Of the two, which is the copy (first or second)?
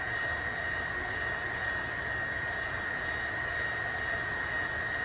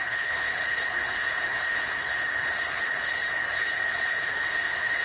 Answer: second